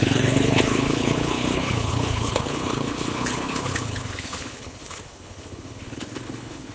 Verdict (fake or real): fake